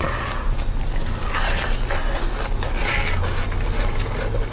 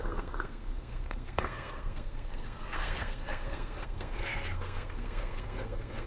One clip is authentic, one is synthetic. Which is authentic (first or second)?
first